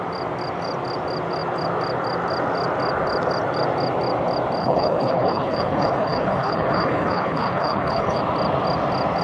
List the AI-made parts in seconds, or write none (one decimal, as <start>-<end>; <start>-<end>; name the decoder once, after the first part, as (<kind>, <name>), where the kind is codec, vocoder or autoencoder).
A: 4.6-8.2 (codec, HILCodec)